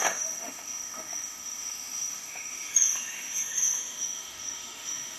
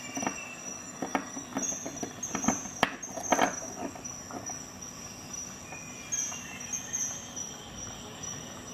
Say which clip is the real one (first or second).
second